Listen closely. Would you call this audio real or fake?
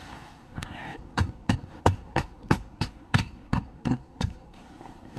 fake